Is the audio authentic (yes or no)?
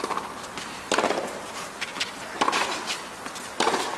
yes